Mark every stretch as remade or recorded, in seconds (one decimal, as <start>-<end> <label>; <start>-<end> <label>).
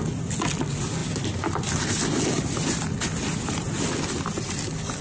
0.0-5.0 recorded